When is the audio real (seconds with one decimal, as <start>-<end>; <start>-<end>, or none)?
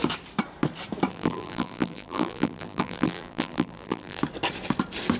0.0-1.1; 4.2-5.2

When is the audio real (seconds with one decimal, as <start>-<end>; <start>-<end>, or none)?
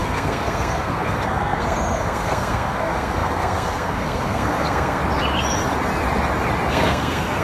5.0-6.7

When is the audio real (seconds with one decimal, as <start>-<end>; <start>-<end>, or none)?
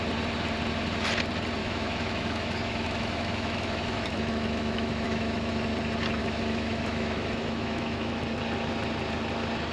0.0-1.6; 5.5-6.2; 8.2-9.7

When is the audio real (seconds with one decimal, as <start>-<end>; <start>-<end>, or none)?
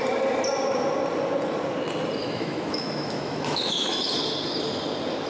0.0-2.2; 4.2-5.3